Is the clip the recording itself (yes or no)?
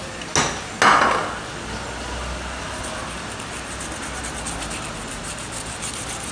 yes